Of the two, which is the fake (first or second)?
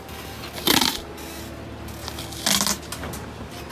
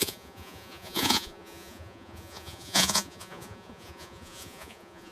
second